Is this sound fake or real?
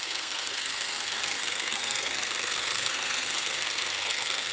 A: fake